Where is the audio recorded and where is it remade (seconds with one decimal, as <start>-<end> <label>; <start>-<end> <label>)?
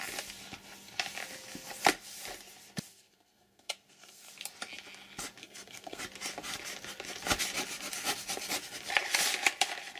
0.0-2.9 recorded; 2.9-4.3 remade; 4.3-5.4 recorded; 5.4-6.0 remade; 6.0-10.0 recorded